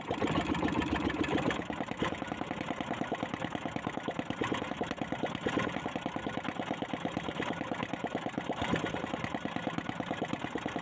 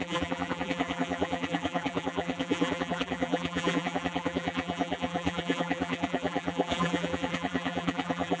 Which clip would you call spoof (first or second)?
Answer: second